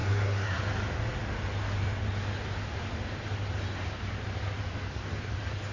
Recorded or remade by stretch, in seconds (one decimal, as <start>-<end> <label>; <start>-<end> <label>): 0.0-0.6 remade; 0.6-5.7 recorded